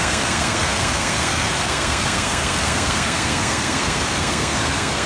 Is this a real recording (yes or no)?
no